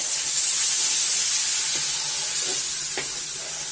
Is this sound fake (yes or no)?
no